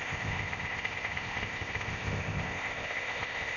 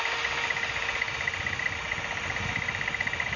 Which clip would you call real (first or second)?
second